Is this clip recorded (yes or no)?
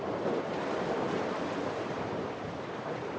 no